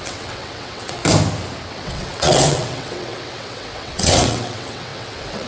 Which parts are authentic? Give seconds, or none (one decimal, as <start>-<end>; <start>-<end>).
1.0-1.7